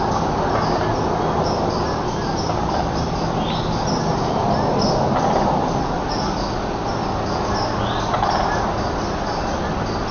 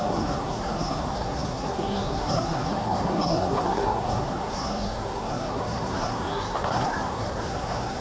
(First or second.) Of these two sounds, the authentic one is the first